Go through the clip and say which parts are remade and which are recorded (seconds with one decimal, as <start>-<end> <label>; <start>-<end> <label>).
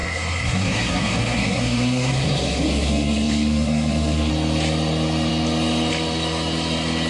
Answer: 0.0-4.3 remade; 4.3-7.1 recorded